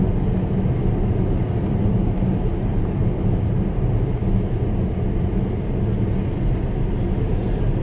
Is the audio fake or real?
real